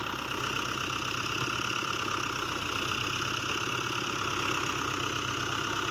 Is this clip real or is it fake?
real